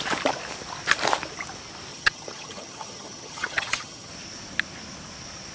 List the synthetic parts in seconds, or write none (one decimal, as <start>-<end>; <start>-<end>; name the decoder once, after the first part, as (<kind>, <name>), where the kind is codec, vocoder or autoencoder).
1.9-4.1 (vocoder, HiFi-GAN)